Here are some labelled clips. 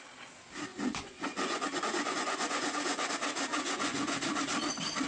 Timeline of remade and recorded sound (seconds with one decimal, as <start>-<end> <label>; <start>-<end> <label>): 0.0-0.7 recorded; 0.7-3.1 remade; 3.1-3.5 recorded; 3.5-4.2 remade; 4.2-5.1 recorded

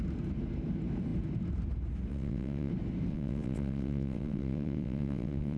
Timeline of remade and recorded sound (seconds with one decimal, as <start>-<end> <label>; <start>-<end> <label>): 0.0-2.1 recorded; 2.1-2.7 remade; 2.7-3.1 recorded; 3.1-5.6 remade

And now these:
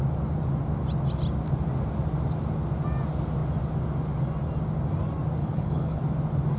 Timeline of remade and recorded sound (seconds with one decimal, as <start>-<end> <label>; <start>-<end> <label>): 0.0-5.4 recorded; 5.4-6.0 remade; 6.0-6.6 recorded

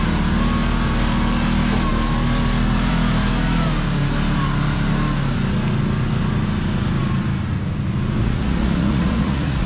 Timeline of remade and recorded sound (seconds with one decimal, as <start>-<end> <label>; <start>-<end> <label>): 0.0-8.2 recorded; 8.2-9.7 remade

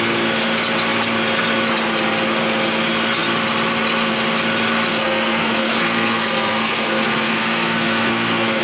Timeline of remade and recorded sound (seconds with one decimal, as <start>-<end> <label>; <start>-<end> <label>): 0.0-4.9 recorded; 4.9-8.6 remade

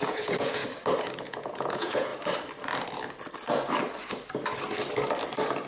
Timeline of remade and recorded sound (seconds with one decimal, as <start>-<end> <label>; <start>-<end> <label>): 0.0-0.6 remade; 0.6-1.2 recorded; 1.2-2.1 remade; 2.1-5.7 recorded

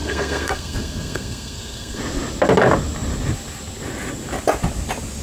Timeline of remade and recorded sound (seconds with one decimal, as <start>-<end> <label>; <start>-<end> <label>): 0.0-2.0 remade; 2.0-5.2 recorded